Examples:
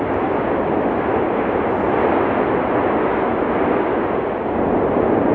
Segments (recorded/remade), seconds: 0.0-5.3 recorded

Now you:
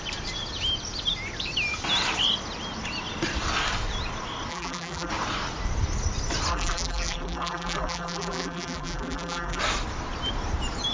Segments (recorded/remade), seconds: 0.0-4.5 recorded; 4.5-5.1 remade; 5.1-6.5 recorded; 6.5-9.6 remade; 9.6-10.9 recorded

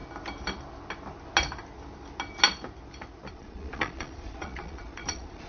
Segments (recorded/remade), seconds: 0.0-3.3 recorded; 3.3-5.5 remade

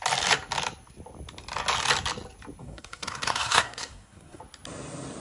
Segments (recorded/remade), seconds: 0.0-2.6 recorded; 2.6-4.4 remade; 4.4-5.2 recorded

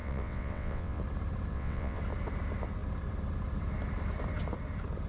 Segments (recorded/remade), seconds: 0.0-1.0 remade; 1.0-1.5 recorded; 1.5-2.0 remade; 2.0-5.1 recorded

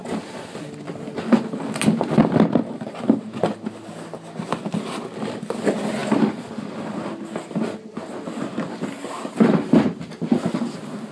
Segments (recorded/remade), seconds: 0.0-11.1 recorded